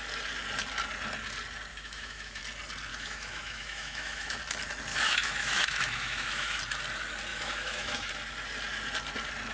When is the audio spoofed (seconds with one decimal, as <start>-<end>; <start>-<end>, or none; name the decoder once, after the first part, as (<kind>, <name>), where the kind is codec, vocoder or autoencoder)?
1.7-2.4 (autoencoder, DAC-VAE); 2.9-4.4; 4.9-6.6; 7.3-8.1

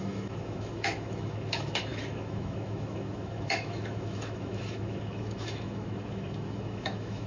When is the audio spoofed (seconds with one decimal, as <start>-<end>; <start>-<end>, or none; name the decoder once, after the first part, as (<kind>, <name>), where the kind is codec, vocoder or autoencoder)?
0.0-7.3 (autoencoder, DAC-VAE)

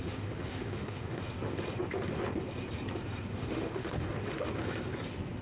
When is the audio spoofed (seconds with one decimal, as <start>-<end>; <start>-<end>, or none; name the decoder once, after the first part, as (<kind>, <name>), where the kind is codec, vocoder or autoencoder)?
0.0-1.2 (autoencoder, DAC-VAE); 3.3-4.5

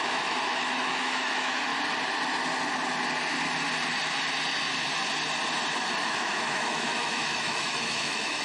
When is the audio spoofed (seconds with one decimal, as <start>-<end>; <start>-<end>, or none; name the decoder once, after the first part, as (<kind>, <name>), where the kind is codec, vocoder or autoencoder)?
0.0-1.7 (autoencoder, DAC-VAE); 6.0-8.4

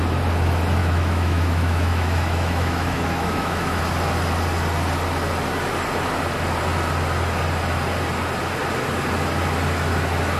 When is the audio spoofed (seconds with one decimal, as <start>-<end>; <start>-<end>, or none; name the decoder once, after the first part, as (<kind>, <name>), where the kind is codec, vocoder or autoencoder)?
0.8-3.8 (autoencoder, DAC-VAE)

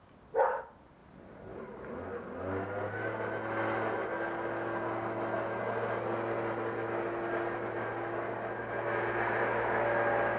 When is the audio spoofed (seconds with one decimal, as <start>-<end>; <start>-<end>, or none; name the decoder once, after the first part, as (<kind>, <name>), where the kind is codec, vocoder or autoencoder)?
none

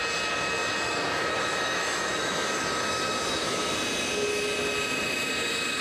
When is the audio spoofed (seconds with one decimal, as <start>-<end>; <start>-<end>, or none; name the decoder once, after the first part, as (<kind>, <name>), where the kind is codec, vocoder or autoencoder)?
0.6-3.7 (autoencoder, DAC-VAE)

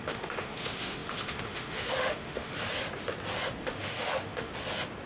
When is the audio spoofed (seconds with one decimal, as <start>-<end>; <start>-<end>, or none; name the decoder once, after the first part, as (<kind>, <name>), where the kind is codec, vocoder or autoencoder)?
0.0-2.5 (autoencoder, DAC-VAE); 3.6-4.5